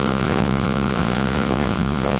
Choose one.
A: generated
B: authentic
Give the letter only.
A